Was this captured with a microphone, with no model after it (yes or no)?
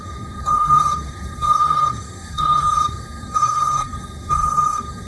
no